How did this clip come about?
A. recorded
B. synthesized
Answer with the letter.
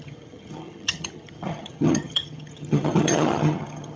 B